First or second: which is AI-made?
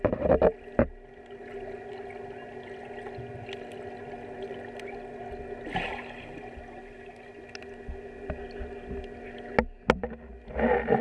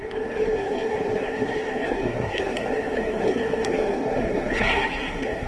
second